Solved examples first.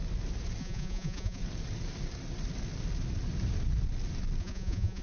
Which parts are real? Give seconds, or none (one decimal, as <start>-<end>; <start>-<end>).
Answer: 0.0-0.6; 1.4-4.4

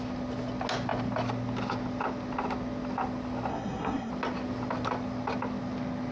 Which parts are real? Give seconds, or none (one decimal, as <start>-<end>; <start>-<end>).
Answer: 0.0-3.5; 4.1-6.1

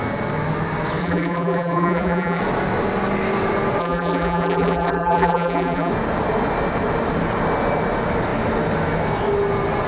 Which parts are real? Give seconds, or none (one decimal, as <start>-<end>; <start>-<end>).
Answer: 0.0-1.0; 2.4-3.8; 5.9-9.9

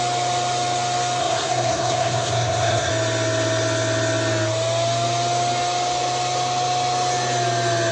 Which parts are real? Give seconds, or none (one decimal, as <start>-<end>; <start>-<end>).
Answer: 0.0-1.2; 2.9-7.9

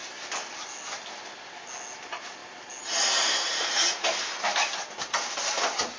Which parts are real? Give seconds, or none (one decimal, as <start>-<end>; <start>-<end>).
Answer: 0.0-6.0

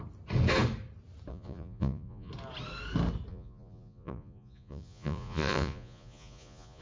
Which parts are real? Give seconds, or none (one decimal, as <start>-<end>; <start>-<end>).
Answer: 0.0-1.3; 2.3-3.3